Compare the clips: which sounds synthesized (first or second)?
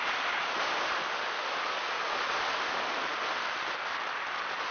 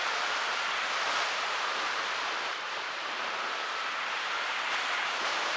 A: second